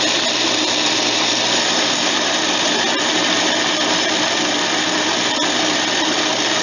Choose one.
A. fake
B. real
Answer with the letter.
B